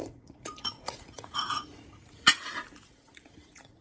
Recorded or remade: remade